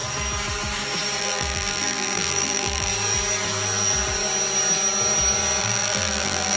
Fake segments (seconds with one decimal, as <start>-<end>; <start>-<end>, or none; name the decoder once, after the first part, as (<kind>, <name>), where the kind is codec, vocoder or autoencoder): 1.2-2.9 (vocoder, BigVGAN v2); 5.6-6.6